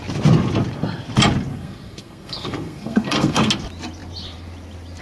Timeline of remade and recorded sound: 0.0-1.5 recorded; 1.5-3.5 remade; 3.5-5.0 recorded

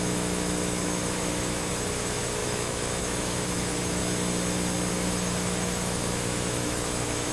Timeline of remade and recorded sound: 0.0-4.0 remade; 4.0-4.9 recorded; 4.9-7.3 remade